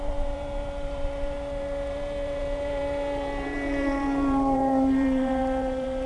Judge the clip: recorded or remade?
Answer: remade